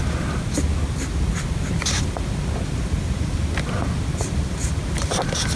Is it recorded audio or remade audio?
recorded